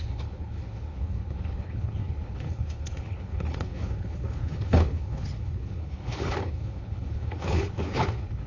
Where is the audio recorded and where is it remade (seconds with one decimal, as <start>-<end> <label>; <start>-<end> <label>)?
0.0-8.5 remade